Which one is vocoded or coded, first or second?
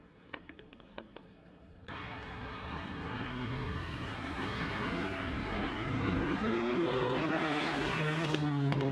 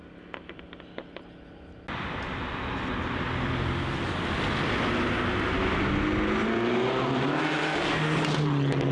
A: first